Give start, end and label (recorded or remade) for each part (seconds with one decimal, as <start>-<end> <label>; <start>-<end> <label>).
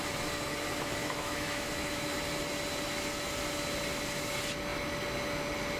0.0-1.0 recorded; 1.0-2.1 remade; 2.1-5.8 recorded